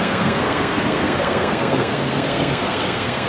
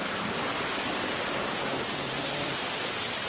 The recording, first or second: second